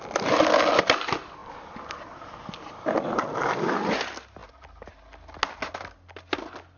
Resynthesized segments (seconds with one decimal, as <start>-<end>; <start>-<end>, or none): none